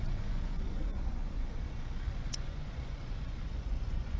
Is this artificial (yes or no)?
yes